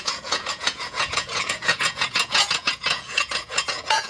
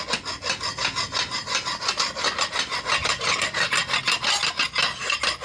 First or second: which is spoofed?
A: first